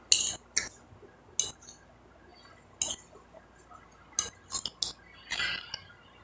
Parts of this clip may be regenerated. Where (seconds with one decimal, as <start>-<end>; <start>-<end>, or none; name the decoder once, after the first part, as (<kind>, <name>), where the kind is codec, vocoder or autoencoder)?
none